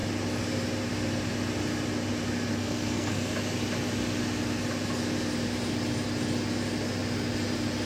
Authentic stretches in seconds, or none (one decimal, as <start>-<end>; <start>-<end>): 0.0-2.5; 3.3-7.9